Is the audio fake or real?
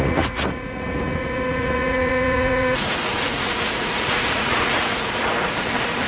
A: fake